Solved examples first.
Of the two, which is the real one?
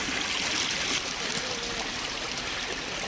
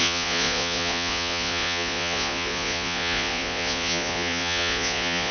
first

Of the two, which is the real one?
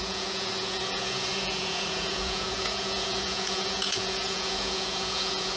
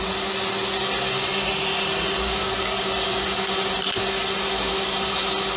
second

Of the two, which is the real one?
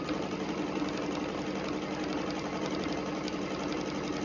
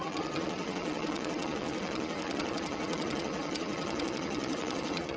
first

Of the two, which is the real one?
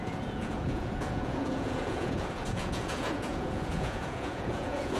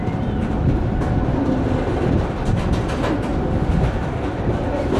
second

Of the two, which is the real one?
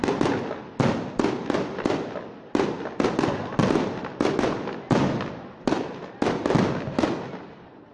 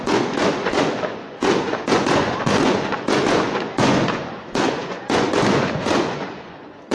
first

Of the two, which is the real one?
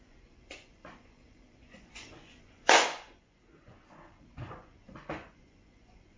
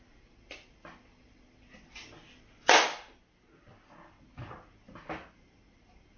second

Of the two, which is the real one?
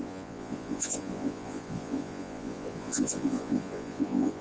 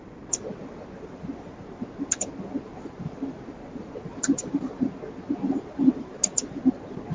second